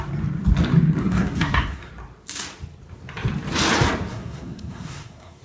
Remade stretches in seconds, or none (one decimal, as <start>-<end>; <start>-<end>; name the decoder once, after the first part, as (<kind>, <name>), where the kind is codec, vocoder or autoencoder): 1.0-1.9 (codec, SNAC); 4.1-5.4